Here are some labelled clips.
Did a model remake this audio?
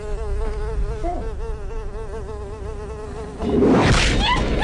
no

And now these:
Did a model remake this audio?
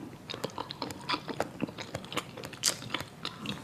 no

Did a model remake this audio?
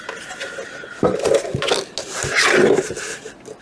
no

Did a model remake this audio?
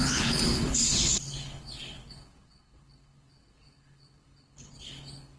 yes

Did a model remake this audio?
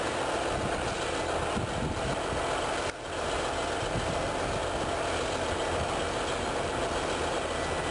no